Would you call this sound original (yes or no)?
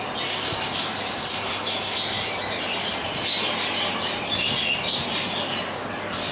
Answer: yes